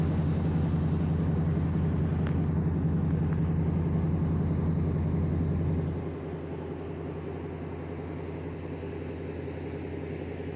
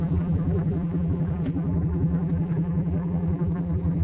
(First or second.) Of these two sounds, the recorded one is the first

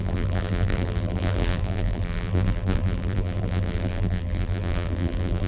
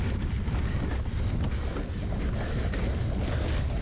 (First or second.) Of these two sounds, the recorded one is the second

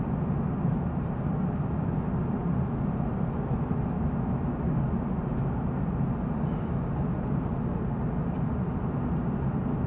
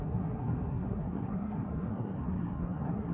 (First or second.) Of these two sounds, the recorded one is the first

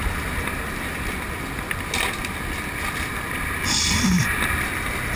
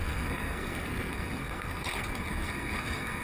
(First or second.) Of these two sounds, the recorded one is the first